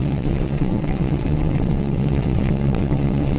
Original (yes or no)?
no